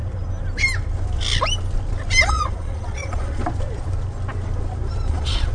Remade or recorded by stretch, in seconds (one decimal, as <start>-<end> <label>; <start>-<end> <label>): 0.0-2.2 recorded; 2.2-3.4 remade; 3.4-5.1 recorded; 5.1-5.5 remade